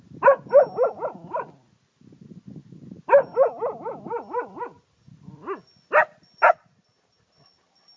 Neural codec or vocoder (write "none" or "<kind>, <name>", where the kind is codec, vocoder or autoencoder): none